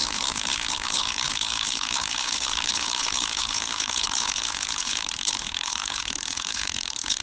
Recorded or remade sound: remade